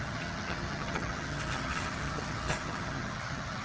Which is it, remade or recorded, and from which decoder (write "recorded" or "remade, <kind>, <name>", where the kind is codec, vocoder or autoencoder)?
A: remade, vocoder, HiFi-GAN